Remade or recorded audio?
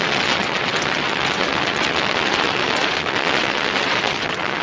remade